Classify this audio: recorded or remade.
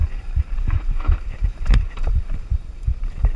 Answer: remade